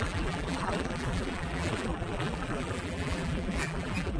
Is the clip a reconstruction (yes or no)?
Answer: yes